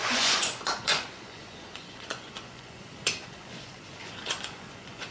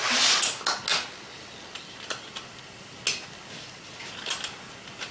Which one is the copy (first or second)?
first